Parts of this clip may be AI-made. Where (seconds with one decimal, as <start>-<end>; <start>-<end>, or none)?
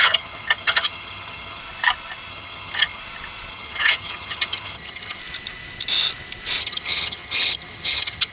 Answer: 0.0-1.6; 2.3-3.0; 3.5-5.2; 6.6-8.3